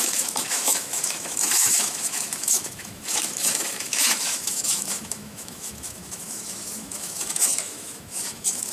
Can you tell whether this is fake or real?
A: fake